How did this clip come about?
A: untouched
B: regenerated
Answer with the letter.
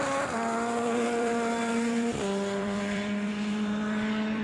B